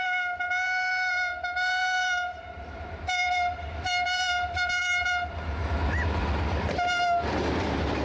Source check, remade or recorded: remade